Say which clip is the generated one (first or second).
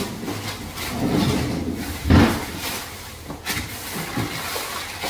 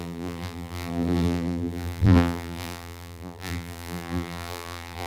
second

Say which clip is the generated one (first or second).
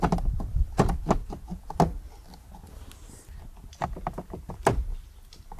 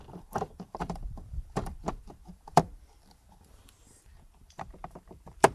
second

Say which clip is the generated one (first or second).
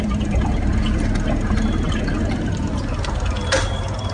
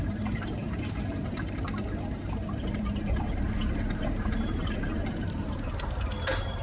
second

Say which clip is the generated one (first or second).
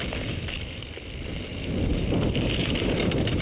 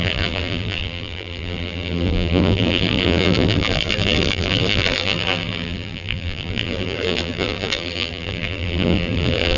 second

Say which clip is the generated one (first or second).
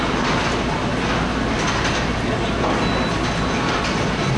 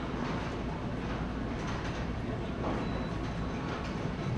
second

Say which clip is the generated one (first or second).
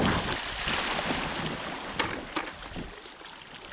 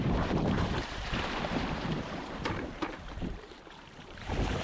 second